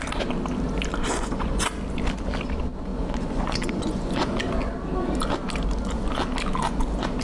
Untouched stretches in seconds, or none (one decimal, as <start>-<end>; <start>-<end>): 0.0-1.1; 1.7-2.9; 4.4-7.2